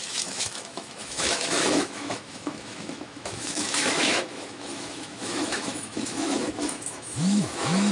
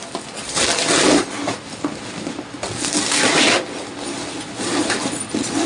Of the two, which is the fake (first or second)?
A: first